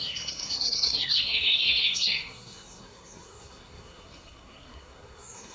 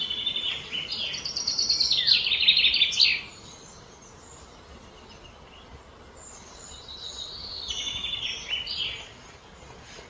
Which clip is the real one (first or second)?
second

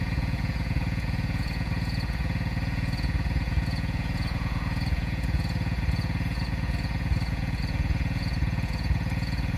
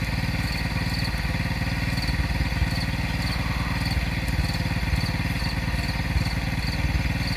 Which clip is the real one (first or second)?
second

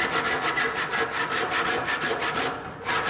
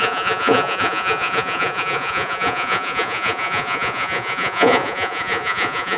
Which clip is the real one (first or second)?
first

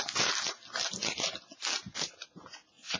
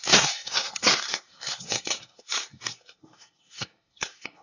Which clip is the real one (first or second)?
first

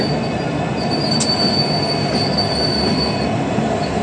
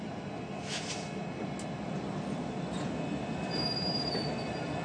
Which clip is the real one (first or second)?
second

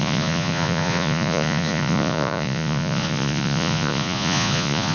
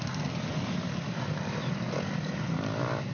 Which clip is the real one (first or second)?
second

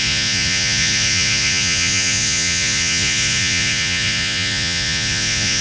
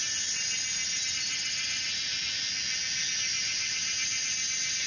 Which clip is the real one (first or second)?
second